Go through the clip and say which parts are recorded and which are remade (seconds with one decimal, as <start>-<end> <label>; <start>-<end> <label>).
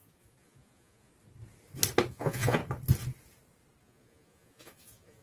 0.0-1.1 remade; 1.1-2.1 recorded; 2.1-2.6 remade; 2.6-3.8 recorded; 3.8-5.2 remade